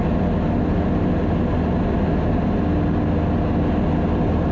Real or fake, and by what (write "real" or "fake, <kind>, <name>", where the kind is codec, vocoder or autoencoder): real